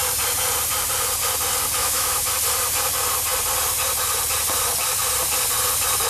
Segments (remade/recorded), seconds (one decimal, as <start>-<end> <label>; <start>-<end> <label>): 0.0-1.8 recorded; 1.8-2.3 remade; 2.3-6.1 recorded